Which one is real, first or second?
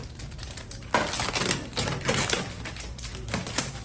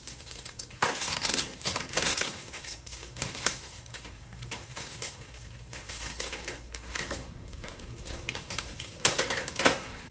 first